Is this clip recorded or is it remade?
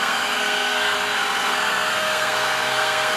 remade